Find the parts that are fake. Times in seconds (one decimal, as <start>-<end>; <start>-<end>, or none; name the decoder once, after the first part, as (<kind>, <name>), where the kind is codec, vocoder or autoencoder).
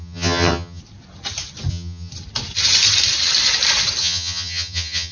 0.0-0.8 (vocoder, HiFi-GAN); 1.7-2.1; 4.0-5.1